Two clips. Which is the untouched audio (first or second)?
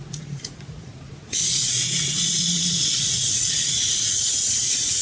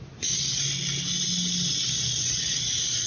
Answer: second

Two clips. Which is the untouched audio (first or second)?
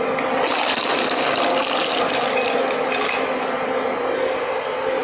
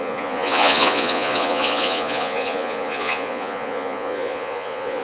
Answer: first